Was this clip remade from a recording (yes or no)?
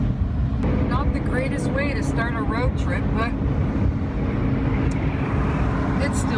no